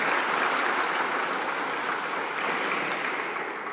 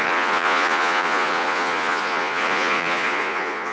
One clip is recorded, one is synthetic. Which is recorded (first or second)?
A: first